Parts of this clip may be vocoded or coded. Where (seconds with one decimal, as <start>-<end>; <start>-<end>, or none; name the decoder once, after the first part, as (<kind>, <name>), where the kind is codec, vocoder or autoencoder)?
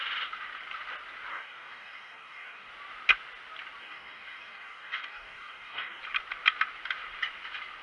1.3-2.7 (codec, DAC); 3.8-6.0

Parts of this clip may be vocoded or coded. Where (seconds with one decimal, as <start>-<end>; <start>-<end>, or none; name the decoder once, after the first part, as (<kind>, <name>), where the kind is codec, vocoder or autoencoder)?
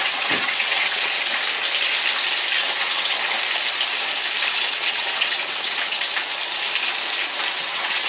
0.0-1.3 (vocoder, WaveNeXt); 2.6-3.1; 4.5-6.2; 7.5-8.1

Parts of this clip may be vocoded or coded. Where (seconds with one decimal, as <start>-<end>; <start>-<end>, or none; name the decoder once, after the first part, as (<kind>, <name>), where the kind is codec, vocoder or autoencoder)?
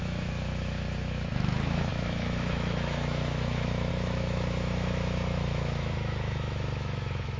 0.0-7.4 (autoencoder, DAC-VAE)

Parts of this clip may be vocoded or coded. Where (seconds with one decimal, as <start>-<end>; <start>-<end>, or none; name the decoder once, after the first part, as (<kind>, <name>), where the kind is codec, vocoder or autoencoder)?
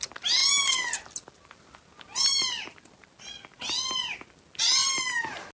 none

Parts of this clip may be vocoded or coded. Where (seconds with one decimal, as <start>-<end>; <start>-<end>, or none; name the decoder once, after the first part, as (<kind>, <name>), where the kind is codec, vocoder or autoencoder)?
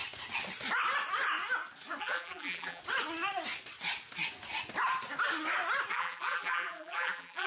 2.0-2.8 (vocoder, BigVGAN v2); 5.9-7.5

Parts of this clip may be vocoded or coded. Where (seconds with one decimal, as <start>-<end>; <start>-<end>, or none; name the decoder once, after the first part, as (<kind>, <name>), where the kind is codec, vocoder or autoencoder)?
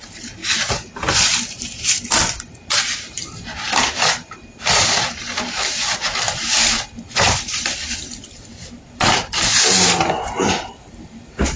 0.0-6.6 (vocoder, BigVGAN v2); 7.2-11.6